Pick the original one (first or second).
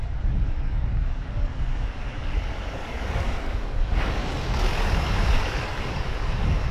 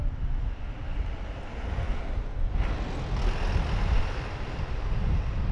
second